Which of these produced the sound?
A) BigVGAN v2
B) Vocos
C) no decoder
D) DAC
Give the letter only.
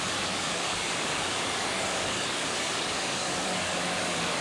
D